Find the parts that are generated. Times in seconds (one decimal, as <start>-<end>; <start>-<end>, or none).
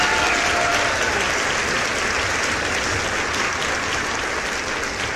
none